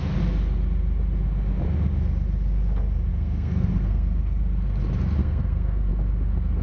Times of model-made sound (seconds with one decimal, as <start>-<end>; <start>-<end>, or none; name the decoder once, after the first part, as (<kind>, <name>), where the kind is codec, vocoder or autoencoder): 3.1-4.4 (codec, SNAC); 5.2-5.9

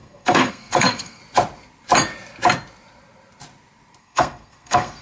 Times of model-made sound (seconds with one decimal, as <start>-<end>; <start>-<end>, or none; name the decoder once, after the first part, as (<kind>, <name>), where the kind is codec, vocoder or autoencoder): 0.0-1.2 (codec, SNAC); 4.0-5.0